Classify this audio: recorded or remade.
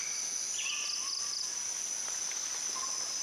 recorded